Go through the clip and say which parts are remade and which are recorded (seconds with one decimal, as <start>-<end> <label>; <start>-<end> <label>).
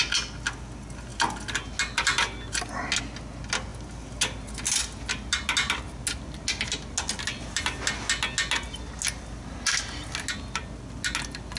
0.0-11.6 recorded